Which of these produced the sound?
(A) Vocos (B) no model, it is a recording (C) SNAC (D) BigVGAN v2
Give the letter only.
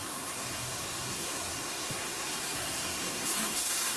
C